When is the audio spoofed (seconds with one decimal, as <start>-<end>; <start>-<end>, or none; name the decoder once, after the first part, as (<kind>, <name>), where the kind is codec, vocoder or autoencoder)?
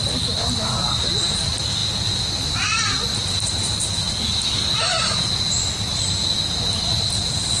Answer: none